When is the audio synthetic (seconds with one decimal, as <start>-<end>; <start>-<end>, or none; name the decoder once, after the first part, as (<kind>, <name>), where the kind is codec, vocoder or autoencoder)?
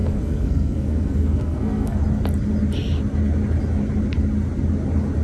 0.0-2.0 (codec, SNAC)